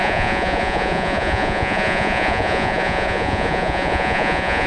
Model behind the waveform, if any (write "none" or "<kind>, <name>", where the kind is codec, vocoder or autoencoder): vocoder, Vocos